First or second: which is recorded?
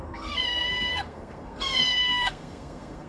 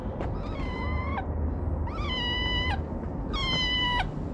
second